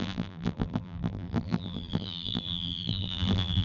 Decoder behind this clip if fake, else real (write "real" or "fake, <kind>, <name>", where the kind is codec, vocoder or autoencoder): fake, vocoder, BigVGAN v2